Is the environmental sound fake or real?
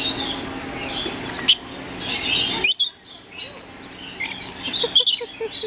real